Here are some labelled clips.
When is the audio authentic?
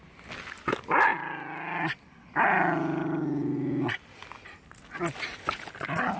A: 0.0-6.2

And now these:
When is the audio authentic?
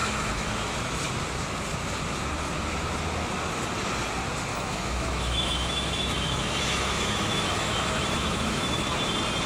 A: 0.5-4.5; 9.1-9.5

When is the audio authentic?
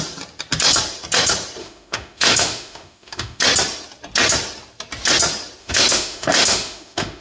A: 0.0-1.6; 3.4-5.6